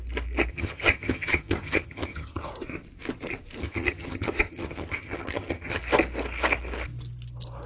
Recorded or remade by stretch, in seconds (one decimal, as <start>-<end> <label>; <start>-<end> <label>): 0.0-0.5 recorded; 0.5-2.5 remade; 2.5-3.6 recorded; 3.6-5.8 remade; 5.8-7.7 recorded